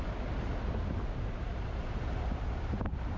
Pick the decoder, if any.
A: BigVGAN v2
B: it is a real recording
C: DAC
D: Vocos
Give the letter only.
B